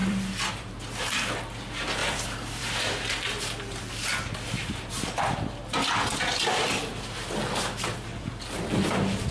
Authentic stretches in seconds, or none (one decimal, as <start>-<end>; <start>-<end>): 0.8-2.0; 2.8-9.3